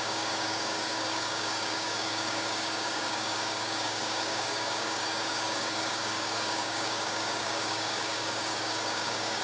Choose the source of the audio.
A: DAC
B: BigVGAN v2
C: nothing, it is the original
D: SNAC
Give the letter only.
A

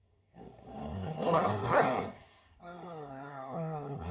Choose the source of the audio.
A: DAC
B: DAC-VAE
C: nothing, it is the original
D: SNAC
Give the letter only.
D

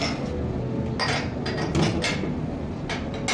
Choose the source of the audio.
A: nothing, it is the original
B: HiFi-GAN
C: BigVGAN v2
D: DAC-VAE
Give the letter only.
A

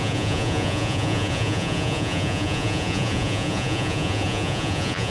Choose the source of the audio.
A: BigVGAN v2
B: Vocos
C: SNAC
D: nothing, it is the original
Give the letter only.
B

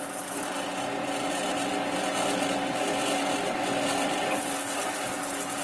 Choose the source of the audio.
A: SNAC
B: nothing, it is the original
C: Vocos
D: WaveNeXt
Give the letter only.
B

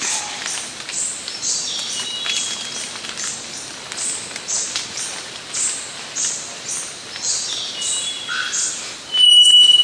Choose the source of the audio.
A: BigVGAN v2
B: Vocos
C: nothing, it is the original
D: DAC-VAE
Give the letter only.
C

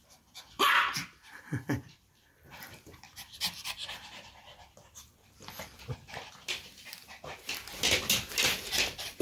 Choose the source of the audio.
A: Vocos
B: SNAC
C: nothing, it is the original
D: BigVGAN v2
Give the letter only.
D